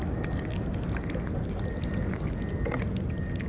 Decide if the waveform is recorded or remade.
recorded